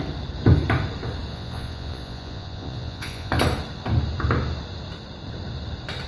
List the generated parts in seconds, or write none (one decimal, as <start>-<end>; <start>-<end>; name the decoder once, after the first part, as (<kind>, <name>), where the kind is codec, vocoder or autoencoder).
1.3-3.3 (vocoder, Vocos)